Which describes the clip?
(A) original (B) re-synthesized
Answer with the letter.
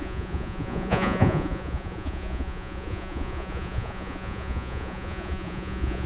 B